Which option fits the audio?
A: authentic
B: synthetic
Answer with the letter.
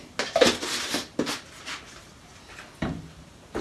A